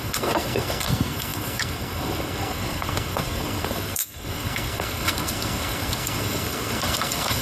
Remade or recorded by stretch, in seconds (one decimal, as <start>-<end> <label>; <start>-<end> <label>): 0.0-7.4 remade